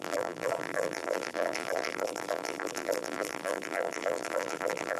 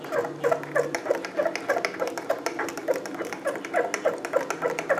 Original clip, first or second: second